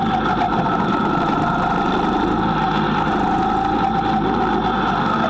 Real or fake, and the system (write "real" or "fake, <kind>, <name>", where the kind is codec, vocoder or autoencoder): real